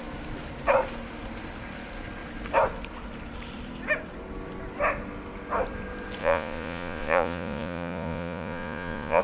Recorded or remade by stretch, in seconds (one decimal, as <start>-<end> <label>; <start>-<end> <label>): 0.0-6.2 recorded; 6.2-9.2 remade